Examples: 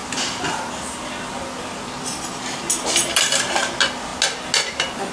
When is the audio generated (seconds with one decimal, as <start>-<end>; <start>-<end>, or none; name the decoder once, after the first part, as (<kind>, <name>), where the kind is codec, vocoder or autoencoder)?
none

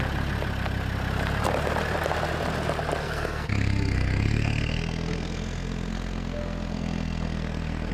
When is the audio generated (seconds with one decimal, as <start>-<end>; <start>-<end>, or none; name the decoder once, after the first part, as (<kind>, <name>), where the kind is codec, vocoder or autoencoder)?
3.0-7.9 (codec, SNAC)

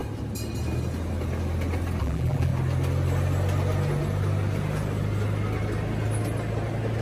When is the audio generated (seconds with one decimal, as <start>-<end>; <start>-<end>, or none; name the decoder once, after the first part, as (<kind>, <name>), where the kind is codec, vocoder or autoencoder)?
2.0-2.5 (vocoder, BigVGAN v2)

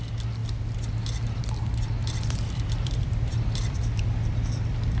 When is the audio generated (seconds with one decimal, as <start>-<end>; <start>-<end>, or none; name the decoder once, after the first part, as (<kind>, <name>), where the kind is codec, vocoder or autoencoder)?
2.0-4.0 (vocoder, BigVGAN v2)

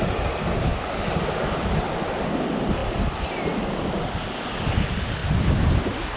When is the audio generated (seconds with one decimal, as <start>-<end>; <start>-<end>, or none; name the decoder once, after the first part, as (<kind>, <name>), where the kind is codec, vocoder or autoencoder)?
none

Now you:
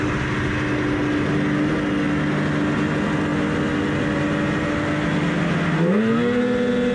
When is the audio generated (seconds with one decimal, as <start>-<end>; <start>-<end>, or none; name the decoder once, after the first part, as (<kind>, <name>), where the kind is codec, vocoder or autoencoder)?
none

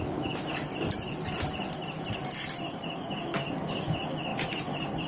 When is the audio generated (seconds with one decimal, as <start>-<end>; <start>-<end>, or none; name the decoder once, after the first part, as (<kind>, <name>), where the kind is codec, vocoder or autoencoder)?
none